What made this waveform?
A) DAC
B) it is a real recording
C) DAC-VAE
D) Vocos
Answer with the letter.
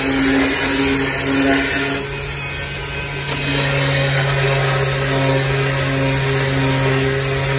B